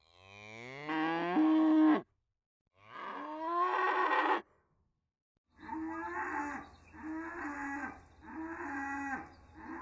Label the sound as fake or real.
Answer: real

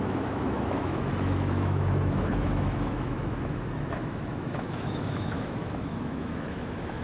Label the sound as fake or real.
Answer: fake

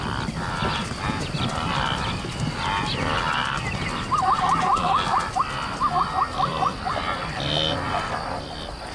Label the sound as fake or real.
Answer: real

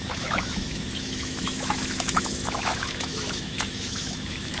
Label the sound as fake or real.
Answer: fake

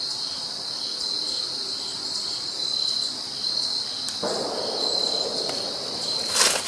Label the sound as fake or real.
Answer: real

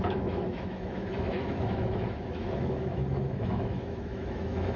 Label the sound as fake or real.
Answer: fake